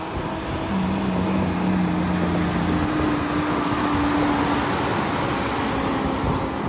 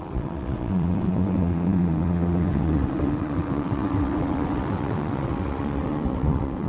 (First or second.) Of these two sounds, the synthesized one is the second